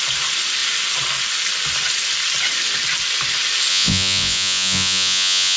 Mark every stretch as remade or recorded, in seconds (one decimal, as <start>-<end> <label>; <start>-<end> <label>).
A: 0.0-3.7 recorded; 3.7-5.6 remade